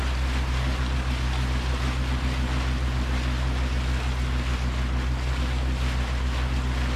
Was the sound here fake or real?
real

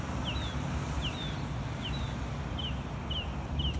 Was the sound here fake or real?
real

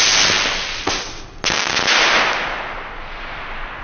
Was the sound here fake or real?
real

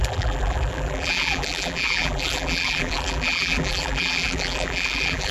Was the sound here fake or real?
fake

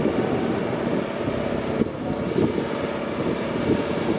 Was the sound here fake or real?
real